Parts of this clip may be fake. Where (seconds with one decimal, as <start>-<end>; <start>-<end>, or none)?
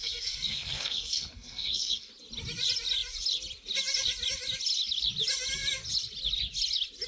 0.0-2.1